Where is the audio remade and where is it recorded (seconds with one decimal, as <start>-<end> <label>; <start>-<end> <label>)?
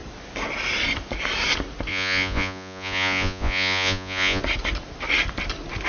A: 0.0-1.9 recorded; 1.9-4.4 remade; 4.4-5.9 recorded